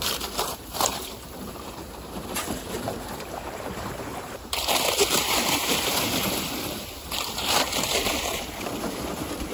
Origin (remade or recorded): remade